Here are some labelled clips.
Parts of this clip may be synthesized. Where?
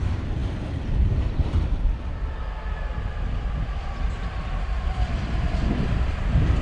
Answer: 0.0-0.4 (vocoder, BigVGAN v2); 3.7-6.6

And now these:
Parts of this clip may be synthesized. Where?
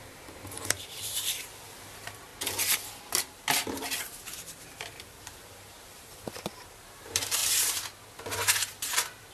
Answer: 0.0-2.3 (vocoder, BigVGAN v2); 3.1-7.4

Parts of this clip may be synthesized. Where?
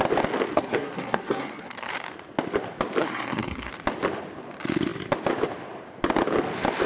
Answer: 0.5-1.9 (codec, SNAC); 3.0-3.7